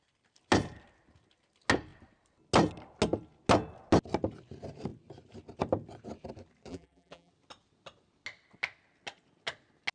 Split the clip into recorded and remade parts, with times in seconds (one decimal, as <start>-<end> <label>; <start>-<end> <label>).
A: 0.0-6.7 recorded; 6.7-7.3 remade; 7.3-9.9 recorded